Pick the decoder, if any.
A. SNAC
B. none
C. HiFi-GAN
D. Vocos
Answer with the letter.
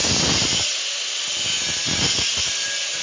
B